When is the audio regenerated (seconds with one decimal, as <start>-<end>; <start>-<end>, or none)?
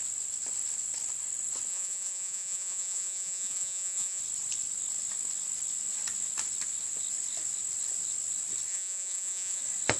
1.7-4.2; 8.7-9.6